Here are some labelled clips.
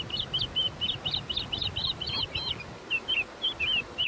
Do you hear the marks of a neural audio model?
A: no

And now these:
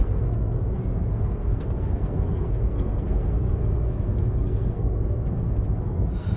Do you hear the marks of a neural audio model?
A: yes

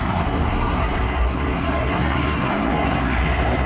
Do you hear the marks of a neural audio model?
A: yes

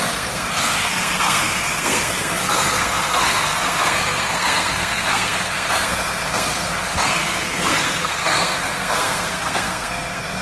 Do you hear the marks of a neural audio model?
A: yes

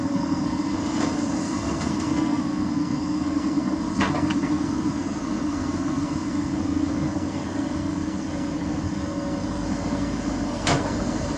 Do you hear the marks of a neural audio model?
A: yes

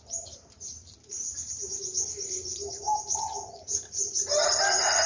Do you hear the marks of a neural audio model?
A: no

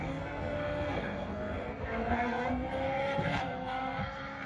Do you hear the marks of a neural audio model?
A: yes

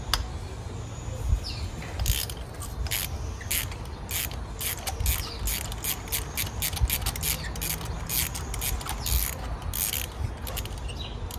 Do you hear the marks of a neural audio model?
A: no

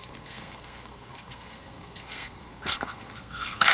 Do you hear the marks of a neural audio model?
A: yes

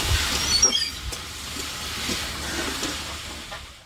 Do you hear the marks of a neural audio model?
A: no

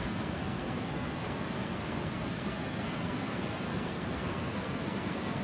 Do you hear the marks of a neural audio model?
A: yes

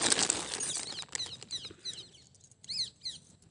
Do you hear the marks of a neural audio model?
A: no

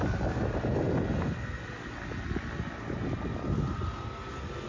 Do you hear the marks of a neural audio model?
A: no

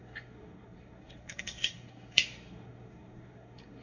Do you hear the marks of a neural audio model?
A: yes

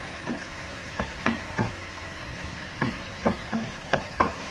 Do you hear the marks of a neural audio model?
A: yes